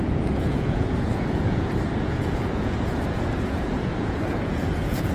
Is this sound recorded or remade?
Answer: remade